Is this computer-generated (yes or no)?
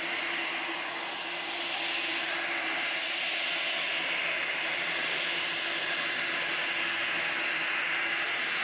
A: no